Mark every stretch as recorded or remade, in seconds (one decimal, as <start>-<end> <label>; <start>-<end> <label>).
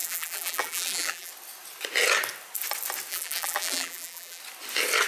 0.0-1.3 remade; 1.3-3.1 recorded; 3.1-4.4 remade; 4.4-5.1 recorded